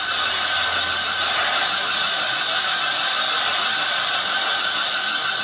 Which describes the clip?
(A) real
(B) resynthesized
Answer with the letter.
A